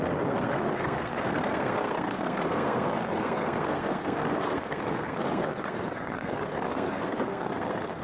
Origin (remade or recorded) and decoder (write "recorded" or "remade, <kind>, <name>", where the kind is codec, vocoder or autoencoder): remade, codec, SNAC